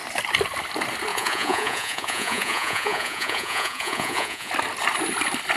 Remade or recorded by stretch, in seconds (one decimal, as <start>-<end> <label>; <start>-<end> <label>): 0.0-1.1 recorded; 1.1-4.5 remade; 4.5-5.6 recorded

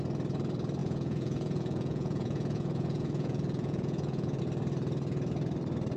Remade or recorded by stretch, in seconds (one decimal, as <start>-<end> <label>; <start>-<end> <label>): 0.0-0.8 recorded; 0.8-4.4 remade; 4.4-6.0 recorded

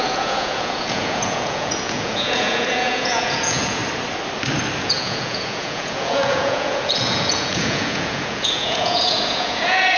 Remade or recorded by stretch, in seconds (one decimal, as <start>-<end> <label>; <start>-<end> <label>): 0.0-3.8 remade; 3.8-4.8 recorded; 4.8-10.0 remade

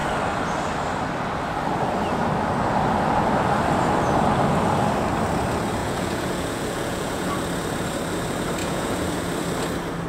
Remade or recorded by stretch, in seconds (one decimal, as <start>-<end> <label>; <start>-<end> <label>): 0.0-5.8 recorded; 5.8-7.3 remade; 7.3-8.6 recorded; 8.6-9.3 remade; 9.3-10.1 recorded